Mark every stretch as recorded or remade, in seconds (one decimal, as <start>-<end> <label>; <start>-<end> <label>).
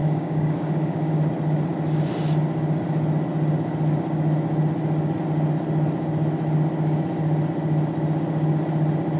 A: 0.0-1.1 remade; 1.1-9.2 recorded